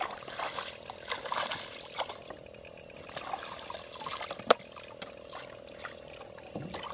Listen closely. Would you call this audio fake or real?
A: real